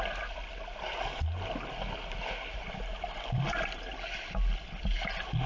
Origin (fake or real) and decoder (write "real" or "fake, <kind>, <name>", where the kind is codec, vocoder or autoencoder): real